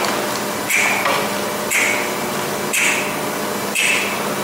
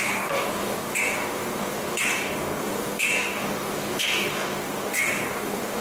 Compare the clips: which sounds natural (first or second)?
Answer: first